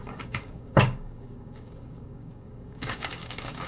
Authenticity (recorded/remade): remade